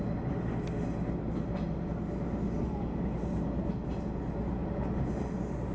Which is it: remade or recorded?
recorded